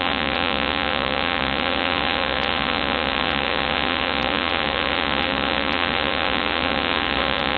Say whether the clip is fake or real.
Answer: fake